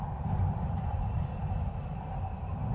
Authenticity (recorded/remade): recorded